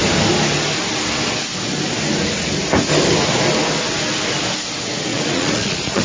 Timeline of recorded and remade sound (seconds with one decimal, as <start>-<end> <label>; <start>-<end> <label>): 0.0-5.1 recorded; 5.1-6.0 remade